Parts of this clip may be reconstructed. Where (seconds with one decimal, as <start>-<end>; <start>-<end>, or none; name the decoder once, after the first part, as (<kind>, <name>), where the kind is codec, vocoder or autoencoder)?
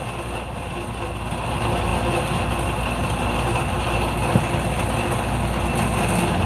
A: none